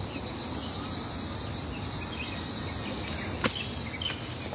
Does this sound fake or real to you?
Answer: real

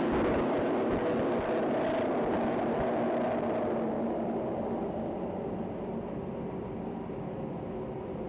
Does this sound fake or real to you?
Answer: real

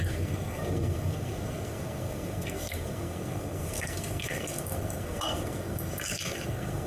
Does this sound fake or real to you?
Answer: fake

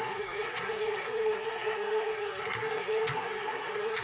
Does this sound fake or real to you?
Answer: fake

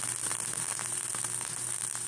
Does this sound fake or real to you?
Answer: real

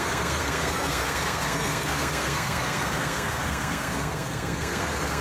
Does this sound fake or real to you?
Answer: fake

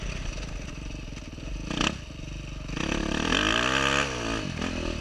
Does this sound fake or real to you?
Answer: real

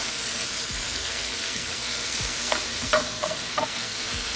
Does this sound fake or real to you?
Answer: fake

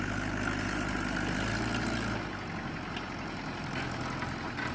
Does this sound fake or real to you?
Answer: real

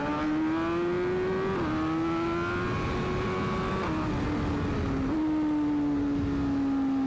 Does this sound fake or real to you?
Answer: real